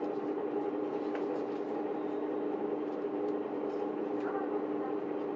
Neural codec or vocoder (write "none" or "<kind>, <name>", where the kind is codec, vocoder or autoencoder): none